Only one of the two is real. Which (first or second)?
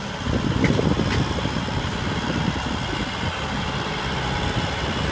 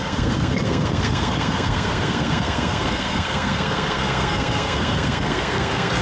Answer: first